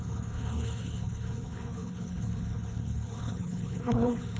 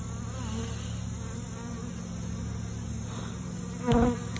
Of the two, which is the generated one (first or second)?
first